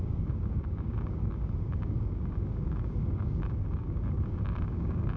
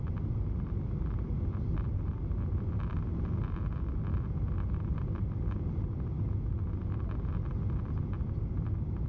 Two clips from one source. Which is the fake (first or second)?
first